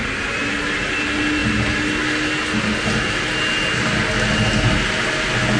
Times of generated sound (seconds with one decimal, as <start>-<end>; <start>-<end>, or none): none